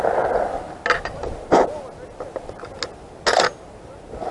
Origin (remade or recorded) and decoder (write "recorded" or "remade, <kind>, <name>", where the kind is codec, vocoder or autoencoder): recorded